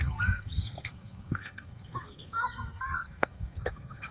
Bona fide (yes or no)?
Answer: no